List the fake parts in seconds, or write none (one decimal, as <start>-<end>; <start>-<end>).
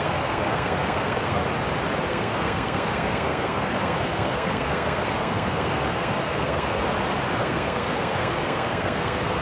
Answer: 0.0-1.4; 2.1-6.8; 7.3-9.4